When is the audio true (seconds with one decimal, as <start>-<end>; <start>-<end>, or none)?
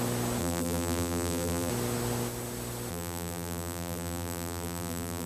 0.0-0.4; 1.7-2.9